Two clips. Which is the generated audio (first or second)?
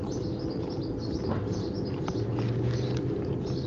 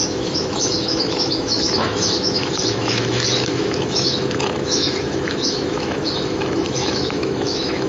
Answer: second